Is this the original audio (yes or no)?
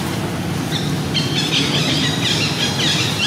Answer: yes